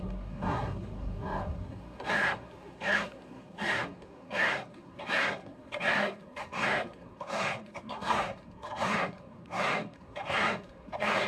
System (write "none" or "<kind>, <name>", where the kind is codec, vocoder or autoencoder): codec, SNAC